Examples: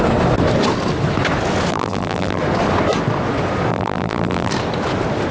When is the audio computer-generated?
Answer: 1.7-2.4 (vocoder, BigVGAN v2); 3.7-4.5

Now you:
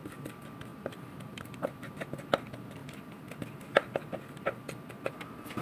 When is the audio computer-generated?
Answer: 0.7-1.9 (vocoder, BigVGAN v2)